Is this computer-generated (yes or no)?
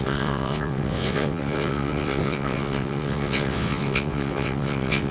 yes